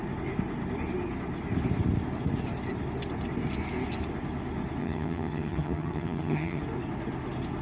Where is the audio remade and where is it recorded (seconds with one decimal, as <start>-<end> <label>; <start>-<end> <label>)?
0.0-4.8 recorded; 4.8-6.6 remade; 6.6-7.6 recorded